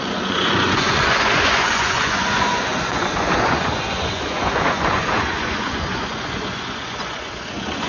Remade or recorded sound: remade